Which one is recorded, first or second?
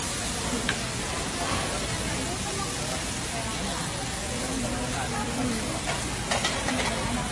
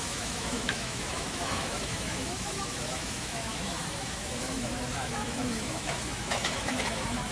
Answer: first